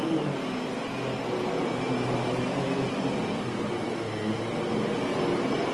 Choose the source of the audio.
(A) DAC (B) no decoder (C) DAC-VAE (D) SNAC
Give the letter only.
B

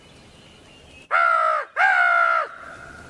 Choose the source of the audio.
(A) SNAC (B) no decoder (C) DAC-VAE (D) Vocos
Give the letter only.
B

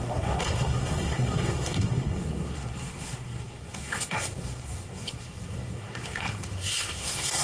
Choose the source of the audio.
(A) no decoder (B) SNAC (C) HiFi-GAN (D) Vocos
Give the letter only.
B